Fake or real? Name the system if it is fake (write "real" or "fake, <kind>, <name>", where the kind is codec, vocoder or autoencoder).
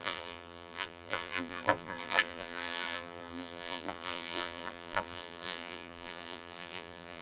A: fake, vocoder, BigVGAN v2